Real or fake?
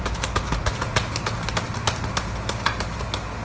real